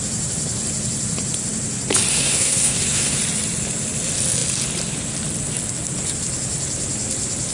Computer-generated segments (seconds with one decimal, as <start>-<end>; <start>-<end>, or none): 2.1-3.2